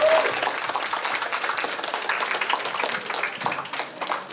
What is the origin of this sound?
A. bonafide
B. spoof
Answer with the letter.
A